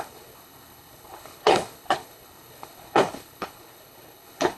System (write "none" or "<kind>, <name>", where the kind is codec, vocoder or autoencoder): codec, HILCodec